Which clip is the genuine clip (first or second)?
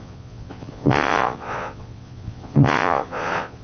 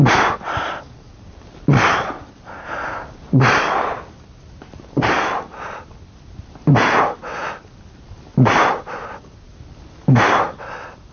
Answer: second